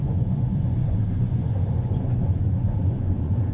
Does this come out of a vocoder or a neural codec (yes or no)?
yes